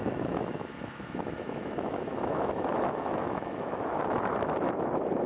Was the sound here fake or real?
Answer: fake